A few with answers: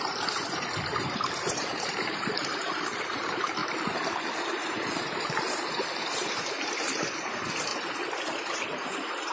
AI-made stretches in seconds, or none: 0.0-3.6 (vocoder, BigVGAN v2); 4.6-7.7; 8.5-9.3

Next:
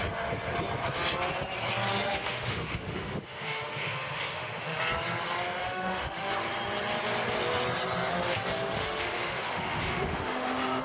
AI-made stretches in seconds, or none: 1.9-4.8 (autoencoder, DAC-VAE); 5.6-6.3; 8.1-10.8

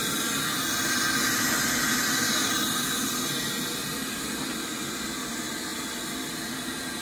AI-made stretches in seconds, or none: 5.7-6.3 (vocoder, BigVGAN v2)

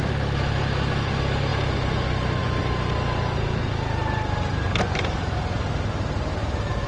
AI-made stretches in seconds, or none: 0.0-6.9 (vocoder, BigVGAN v2)